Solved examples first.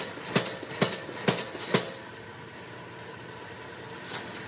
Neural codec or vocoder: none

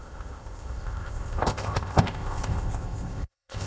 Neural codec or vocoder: codec, ZipCodec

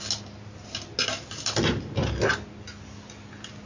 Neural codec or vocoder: none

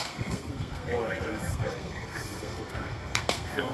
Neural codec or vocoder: codec, SNAC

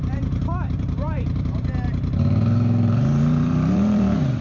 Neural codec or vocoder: vocoder, BigVGAN v2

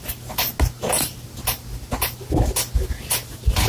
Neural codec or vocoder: none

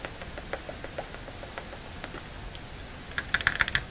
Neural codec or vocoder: none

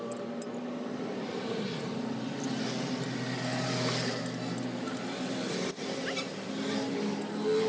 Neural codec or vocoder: none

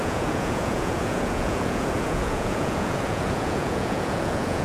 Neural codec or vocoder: vocoder, Vocos